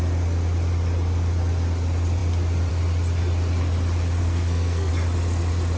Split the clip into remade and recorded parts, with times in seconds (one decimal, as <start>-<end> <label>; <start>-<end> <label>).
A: 0.0-4.2 recorded; 4.2-4.9 remade; 4.9-5.8 recorded

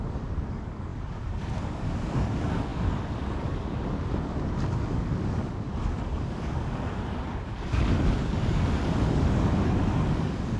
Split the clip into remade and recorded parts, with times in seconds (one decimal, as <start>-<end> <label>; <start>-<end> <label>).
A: 0.0-10.6 remade

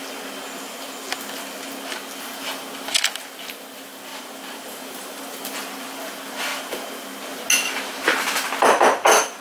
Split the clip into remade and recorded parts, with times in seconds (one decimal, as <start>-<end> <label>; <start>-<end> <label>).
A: 0.0-4.1 recorded; 4.1-5.2 remade; 5.2-9.4 recorded